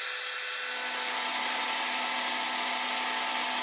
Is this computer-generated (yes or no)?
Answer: no